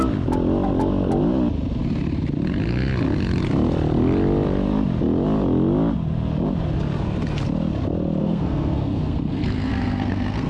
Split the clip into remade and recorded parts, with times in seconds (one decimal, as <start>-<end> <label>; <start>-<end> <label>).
0.0-8.2 recorded; 8.2-10.5 remade